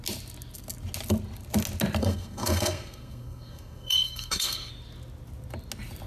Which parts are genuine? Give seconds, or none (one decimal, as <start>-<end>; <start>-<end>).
0.0-2.0; 4.7-6.1